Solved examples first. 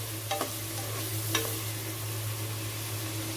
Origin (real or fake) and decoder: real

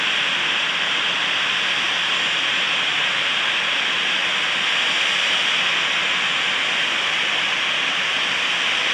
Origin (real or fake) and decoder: real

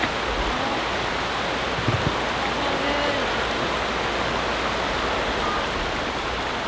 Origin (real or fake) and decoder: real